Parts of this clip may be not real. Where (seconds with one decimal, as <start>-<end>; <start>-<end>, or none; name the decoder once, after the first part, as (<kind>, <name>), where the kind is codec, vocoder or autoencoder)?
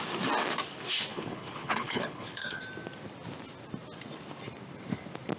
1.1-2.6 (codec, HILCodec)